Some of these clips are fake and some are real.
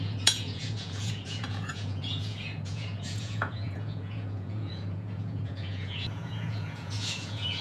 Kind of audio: fake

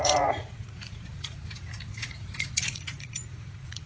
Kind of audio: fake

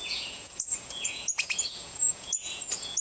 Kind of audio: fake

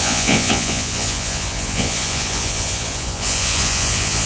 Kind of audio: fake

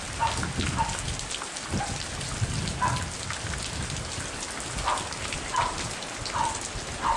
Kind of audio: real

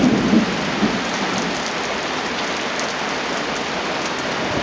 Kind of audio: real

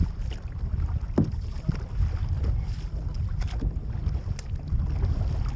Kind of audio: real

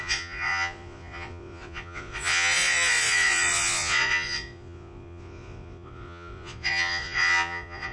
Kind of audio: fake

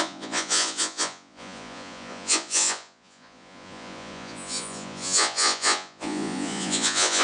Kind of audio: fake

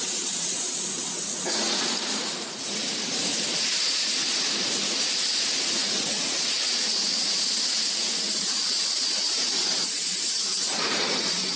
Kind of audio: fake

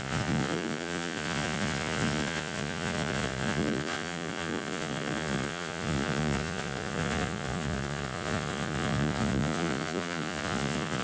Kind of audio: fake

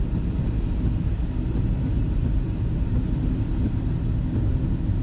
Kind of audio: real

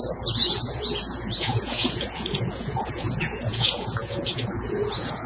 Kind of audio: fake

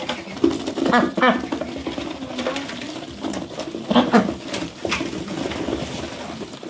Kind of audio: real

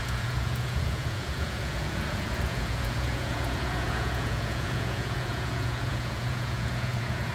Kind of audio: fake